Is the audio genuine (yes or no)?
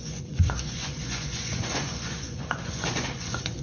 no